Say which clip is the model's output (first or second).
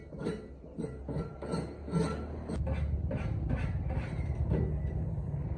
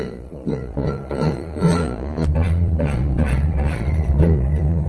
second